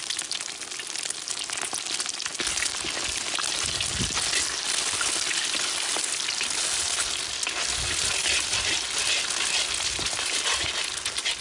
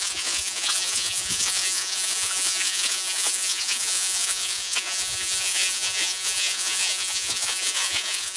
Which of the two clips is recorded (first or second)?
first